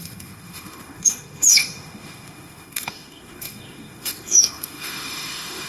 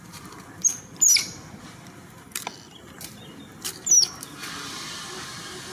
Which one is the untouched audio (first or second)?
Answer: second